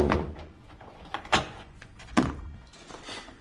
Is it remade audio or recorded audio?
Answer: remade